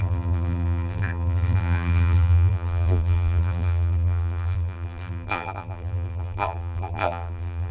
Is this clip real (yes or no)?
no